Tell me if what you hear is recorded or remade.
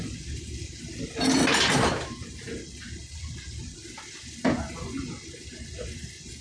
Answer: recorded